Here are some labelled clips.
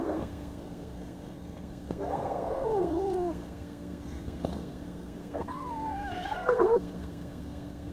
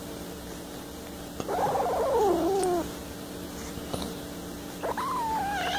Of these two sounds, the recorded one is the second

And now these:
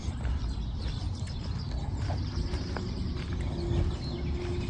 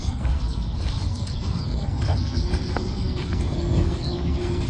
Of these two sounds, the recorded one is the first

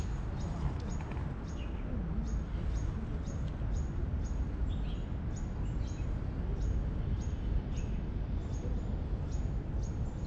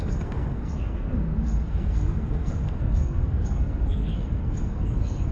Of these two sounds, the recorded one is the first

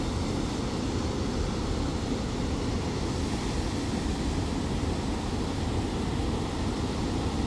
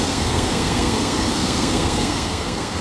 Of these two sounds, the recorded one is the first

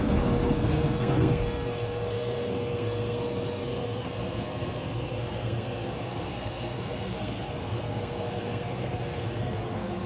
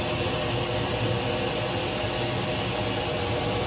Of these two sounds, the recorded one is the second